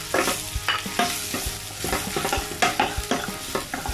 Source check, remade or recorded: recorded